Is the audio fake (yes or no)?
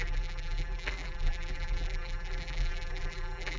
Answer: yes